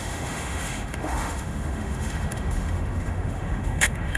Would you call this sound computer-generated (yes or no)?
yes